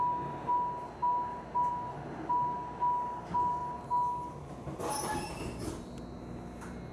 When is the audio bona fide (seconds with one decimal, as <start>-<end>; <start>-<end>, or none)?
0.0-6.9